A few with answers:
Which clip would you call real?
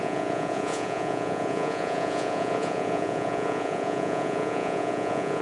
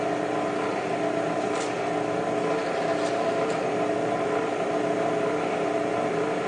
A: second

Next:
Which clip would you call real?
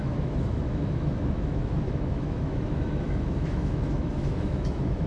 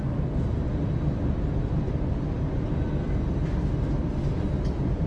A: second